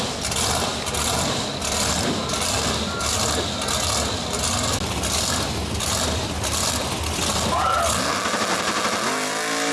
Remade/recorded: recorded